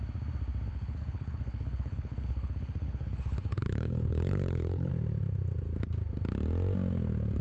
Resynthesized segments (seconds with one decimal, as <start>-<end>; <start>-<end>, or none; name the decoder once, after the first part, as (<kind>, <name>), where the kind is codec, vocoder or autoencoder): 0.7-4.9 (codec, HILCodec)